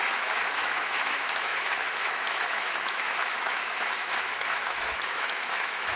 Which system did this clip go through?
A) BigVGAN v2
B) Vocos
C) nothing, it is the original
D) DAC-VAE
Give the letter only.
D